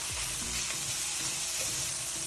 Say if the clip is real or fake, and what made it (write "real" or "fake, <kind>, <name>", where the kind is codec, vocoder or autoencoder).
fake, vocoder, BigVGAN v2